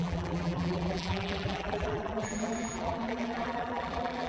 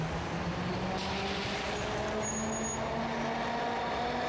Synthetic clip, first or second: first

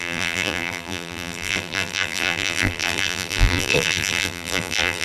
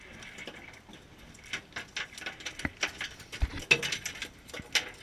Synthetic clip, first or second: first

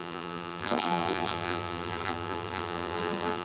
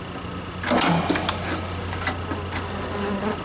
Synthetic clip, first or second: first